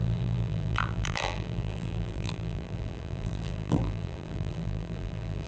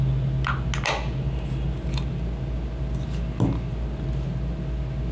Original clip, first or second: second